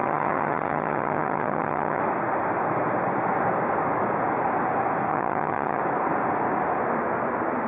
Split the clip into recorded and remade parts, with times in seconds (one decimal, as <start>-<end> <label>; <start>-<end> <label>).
0.0-2.0 remade; 2.0-5.1 recorded; 5.1-5.8 remade; 5.8-7.7 recorded